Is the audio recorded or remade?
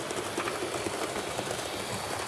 recorded